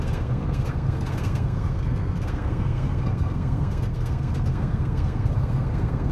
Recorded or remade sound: remade